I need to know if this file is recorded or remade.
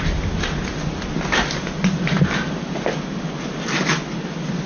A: recorded